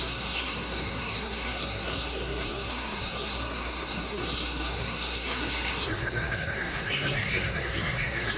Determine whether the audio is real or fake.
fake